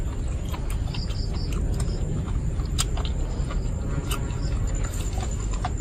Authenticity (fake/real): real